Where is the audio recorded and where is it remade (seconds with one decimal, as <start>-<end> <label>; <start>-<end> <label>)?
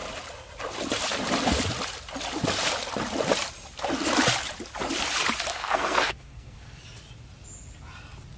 0.0-5.5 recorded; 5.5-6.8 remade; 6.8-8.4 recorded